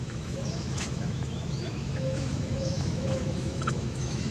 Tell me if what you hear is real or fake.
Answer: fake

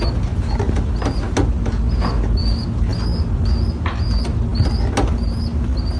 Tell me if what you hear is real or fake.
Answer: real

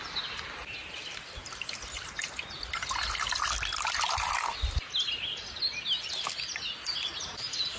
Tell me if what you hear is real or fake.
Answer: real